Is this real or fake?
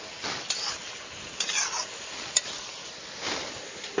real